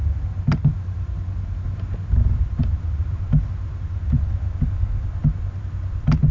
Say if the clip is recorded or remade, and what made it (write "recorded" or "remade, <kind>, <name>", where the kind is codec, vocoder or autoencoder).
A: recorded